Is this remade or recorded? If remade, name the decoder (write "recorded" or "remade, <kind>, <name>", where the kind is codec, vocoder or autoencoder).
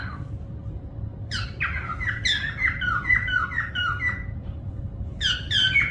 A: recorded